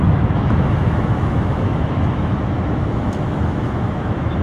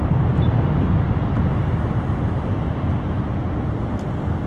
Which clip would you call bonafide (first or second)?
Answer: second